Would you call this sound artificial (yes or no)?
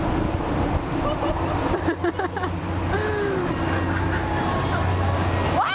no